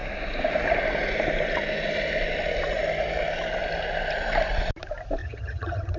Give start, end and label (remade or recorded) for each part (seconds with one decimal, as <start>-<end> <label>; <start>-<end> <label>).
0.0-5.2 recorded; 5.2-6.0 remade